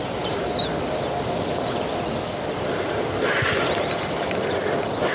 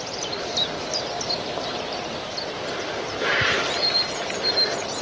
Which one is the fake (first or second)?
second